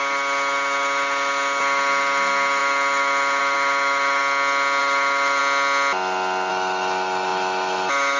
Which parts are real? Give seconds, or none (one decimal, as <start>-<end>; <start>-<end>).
4.2-4.8; 5.4-6.5